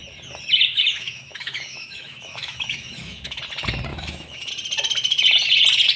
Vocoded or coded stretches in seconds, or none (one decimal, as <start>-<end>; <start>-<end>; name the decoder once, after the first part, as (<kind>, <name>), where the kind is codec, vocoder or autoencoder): 0.7-3.4 (autoencoder, DAC-VAE); 3.9-4.5